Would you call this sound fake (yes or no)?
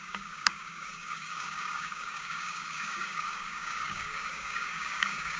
yes